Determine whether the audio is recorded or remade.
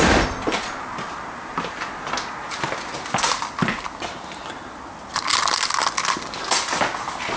recorded